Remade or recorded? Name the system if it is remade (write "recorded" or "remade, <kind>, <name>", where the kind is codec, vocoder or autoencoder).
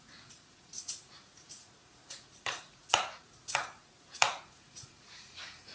remade, vocoder, Vocos